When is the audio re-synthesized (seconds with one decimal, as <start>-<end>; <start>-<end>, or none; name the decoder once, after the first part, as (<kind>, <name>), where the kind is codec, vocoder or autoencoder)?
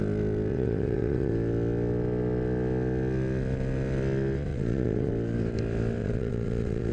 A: 0.5-1.3 (vocoder, WaveNeXt); 4.5-5.1; 6.0-6.9